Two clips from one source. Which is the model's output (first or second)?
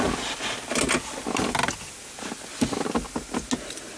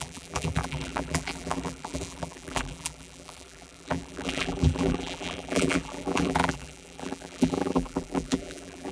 second